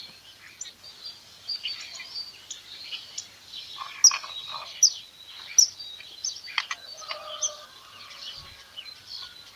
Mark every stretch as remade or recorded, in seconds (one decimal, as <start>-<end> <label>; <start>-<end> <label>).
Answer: 0.0-9.6 recorded